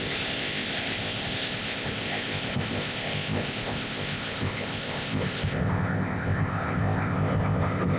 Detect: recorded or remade remade